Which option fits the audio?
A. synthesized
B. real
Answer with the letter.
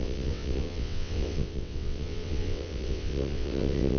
A